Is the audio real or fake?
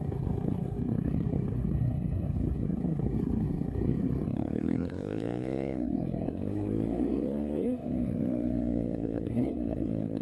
fake